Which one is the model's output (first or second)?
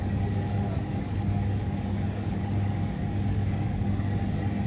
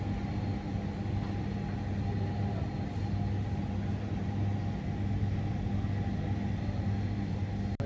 first